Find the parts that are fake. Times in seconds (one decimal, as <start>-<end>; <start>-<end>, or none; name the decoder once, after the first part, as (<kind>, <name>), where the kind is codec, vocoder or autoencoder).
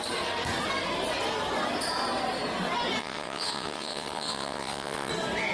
3.0-5.1 (vocoder, WaveNeXt)